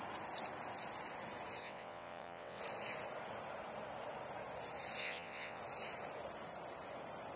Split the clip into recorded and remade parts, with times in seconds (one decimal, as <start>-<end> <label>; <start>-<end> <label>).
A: 0.0-1.6 recorded; 1.6-2.6 remade; 2.6-5.0 recorded; 5.0-5.6 remade; 5.6-7.4 recorded